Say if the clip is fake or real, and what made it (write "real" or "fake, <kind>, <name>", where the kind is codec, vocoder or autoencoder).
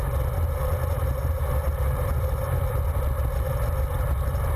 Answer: real